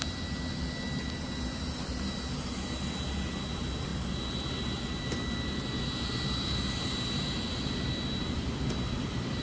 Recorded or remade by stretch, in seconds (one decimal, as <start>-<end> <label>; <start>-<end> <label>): 0.0-9.4 recorded